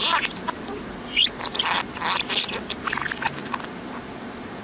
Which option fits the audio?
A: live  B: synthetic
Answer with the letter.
A